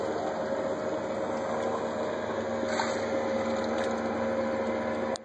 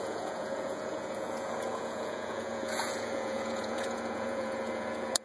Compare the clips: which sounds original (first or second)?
first